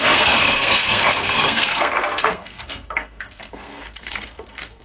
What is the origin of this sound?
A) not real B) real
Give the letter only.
A